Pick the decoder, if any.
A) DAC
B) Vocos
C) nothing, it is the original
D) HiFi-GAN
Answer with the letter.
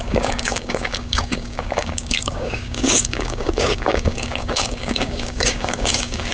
A